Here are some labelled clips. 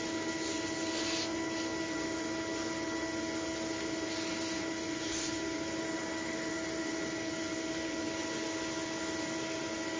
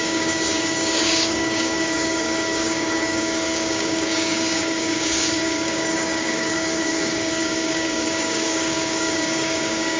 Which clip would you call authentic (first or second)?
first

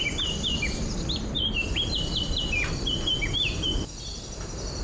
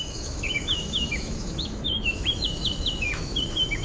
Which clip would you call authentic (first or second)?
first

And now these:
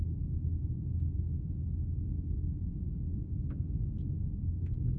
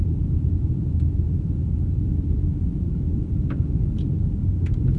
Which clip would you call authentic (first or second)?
first